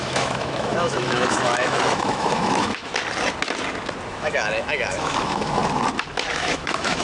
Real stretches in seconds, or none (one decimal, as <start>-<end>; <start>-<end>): 2.9-4.1; 5.6-6.3